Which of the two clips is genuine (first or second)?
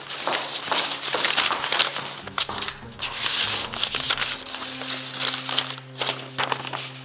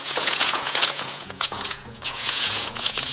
first